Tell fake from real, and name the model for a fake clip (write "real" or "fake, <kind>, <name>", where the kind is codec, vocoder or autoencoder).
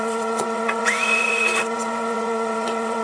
fake, vocoder, WaveNeXt